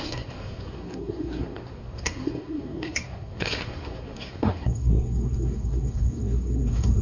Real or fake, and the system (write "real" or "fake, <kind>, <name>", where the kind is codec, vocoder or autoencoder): fake, codec, SNAC